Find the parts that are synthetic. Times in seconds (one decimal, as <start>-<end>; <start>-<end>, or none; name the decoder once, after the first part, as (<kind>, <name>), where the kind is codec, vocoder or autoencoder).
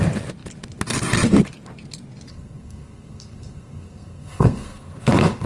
2.3-5.5 (codec, SNAC)